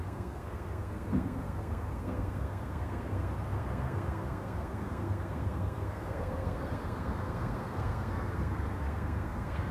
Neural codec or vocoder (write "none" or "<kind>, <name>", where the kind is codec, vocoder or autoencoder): codec, SNAC